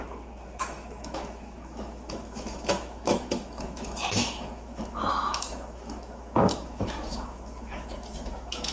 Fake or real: fake